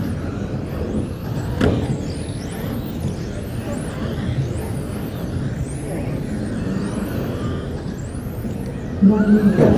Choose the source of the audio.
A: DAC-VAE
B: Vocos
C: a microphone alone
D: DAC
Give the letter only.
C